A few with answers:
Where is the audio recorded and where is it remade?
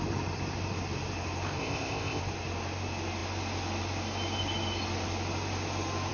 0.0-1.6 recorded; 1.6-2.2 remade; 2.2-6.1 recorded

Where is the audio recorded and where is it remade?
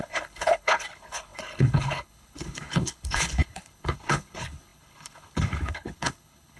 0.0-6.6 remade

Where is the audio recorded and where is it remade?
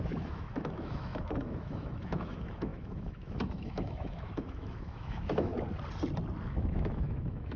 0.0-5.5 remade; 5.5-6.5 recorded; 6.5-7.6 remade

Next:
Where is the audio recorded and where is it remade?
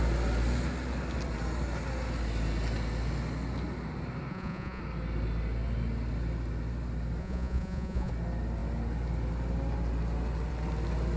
0.0-4.3 recorded; 4.3-4.8 remade; 4.8-7.2 recorded; 7.2-8.1 remade; 8.1-11.2 recorded